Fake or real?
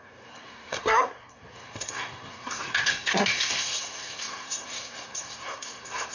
fake